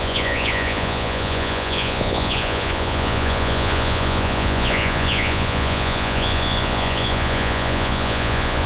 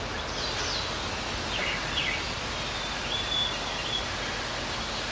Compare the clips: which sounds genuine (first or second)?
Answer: second